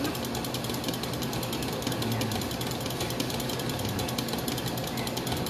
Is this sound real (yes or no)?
yes